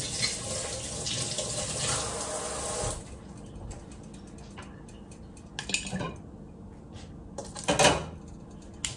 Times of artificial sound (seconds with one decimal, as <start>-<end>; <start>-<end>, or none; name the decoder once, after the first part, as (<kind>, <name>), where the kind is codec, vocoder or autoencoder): none